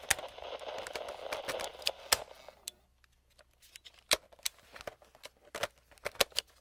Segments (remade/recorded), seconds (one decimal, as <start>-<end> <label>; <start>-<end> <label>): 0.0-6.6 recorded